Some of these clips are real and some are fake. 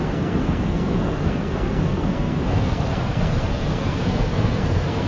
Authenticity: fake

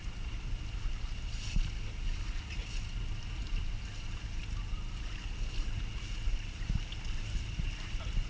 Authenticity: real